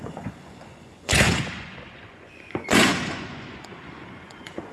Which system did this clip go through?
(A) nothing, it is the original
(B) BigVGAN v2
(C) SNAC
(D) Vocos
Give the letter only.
D